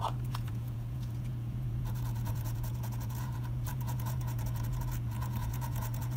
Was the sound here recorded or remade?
remade